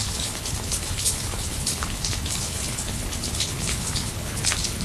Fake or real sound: fake